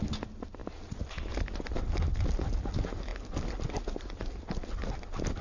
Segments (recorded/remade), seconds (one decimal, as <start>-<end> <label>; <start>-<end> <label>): 0.0-5.4 recorded